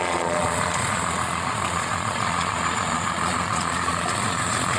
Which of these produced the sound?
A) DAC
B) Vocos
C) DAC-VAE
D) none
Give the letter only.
B